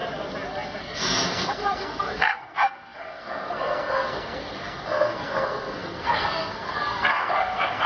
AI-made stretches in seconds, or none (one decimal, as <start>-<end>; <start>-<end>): 0.8-7.9